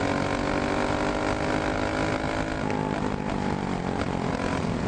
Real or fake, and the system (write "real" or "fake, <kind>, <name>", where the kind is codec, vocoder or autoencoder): real